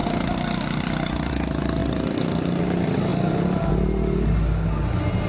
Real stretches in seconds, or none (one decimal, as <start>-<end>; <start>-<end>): 0.0-5.3